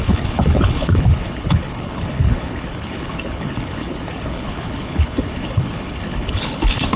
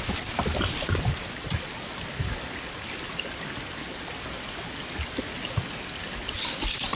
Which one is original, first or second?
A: second